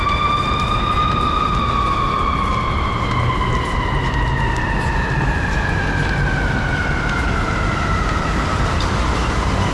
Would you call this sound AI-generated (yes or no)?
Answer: no